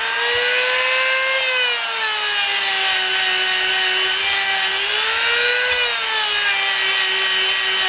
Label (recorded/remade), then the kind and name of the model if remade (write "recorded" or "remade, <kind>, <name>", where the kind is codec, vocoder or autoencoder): recorded